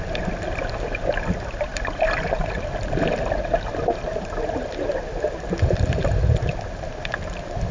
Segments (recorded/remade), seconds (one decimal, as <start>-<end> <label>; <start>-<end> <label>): 0.0-7.7 recorded